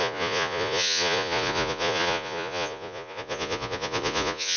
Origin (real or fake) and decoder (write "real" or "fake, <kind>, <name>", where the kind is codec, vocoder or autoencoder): fake, vocoder, Vocos